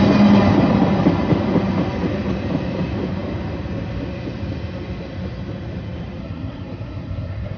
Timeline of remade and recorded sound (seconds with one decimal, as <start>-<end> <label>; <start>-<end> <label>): 0.0-6.2 recorded; 6.2-7.6 remade